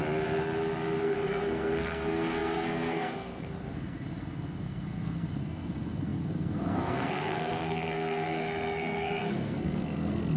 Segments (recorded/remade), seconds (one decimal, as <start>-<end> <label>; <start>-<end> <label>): 0.0-1.0 recorded; 1.0-10.4 remade